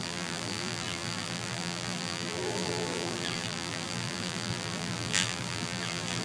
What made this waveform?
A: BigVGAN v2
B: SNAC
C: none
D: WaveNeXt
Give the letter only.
A